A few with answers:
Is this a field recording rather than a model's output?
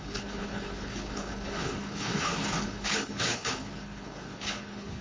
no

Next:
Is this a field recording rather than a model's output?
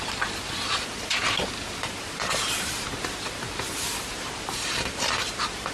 no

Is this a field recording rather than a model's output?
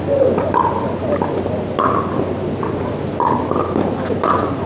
yes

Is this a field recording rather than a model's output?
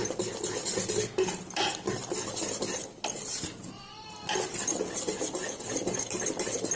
yes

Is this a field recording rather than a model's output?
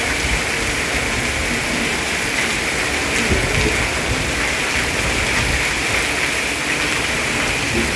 yes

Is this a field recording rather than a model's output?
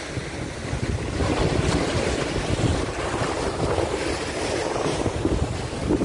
yes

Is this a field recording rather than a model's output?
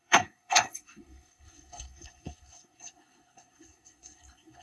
no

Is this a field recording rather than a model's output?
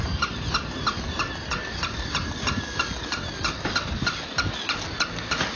yes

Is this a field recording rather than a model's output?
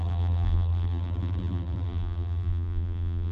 no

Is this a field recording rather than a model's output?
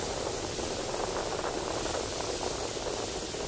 yes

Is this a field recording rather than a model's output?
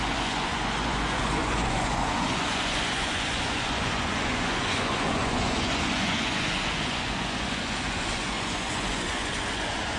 no